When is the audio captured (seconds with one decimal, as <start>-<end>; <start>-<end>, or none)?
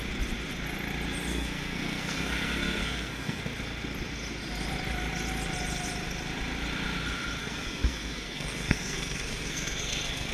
0.0-1.3; 3.4-7.4